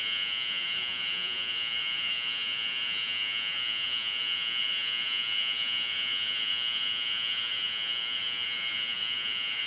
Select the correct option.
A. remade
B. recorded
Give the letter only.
A